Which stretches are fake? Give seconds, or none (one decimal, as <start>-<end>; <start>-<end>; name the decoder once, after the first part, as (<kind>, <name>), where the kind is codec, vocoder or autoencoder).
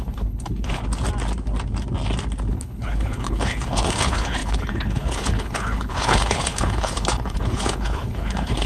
0.0-0.8 (codec, HILCodec); 2.5-8.7